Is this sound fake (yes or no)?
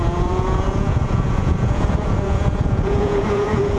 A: yes